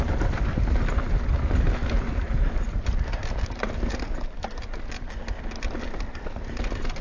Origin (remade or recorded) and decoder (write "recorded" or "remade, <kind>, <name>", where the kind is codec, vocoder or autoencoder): recorded